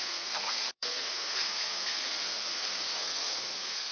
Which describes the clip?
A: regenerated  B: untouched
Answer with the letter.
A